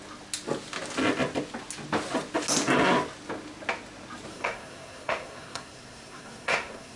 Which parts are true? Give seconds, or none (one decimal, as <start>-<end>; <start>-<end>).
0.0-4.3